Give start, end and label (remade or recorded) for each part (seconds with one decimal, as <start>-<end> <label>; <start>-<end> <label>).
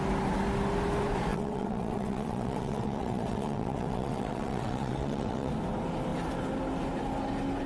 0.0-1.3 recorded; 1.3-5.5 remade; 5.5-7.7 recorded